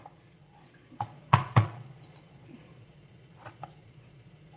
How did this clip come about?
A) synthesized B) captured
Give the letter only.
A